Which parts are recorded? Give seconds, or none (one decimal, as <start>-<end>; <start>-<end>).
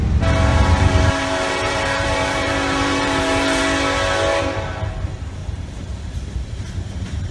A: 0.0-0.5; 3.6-4.3; 4.9-5.4